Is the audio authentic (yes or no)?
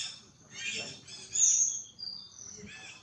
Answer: yes